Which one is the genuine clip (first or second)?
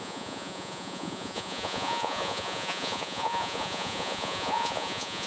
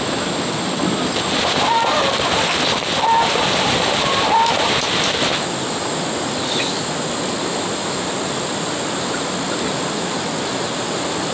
second